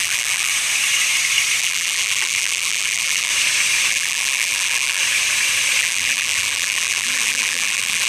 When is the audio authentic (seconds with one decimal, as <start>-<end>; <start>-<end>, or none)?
0.5-1.6; 3.3-3.9; 5.0-5.8